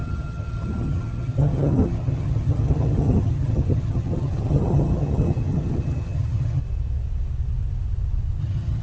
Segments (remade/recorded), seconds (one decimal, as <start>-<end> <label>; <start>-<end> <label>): 0.0-6.6 remade; 6.6-8.4 recorded; 8.4-8.8 remade